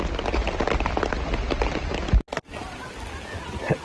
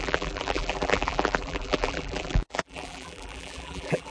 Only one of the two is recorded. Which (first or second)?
first